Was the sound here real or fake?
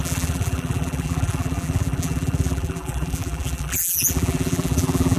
fake